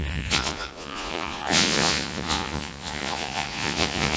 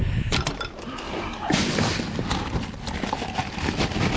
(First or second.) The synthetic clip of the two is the first